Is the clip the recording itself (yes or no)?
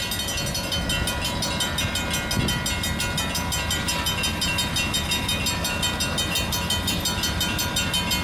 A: yes